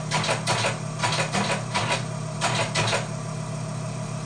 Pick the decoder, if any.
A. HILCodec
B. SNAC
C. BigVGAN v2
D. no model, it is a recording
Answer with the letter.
D